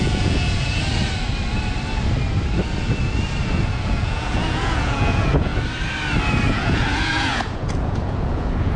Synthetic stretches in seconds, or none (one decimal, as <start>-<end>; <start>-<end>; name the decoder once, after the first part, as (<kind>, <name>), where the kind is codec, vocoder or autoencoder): 0.0-0.8 (vocoder, Vocos); 3.7-5.5; 6.5-8.8